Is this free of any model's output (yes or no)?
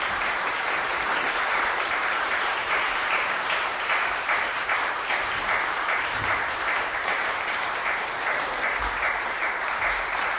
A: no